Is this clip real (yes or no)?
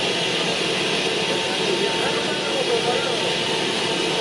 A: yes